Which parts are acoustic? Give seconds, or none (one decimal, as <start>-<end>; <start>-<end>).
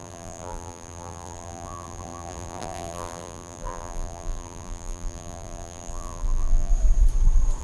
6.7-7.6